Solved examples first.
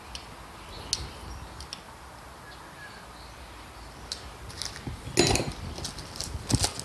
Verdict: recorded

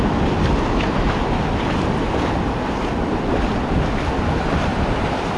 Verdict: recorded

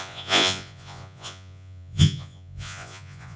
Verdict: remade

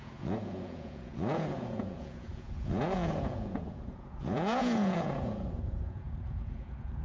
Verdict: remade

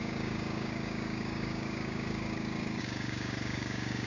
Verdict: remade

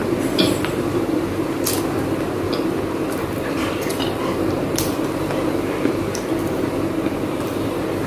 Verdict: remade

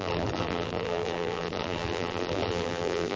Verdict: remade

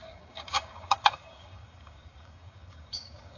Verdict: remade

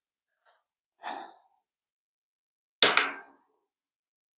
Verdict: recorded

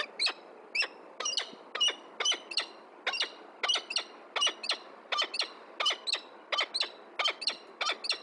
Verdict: recorded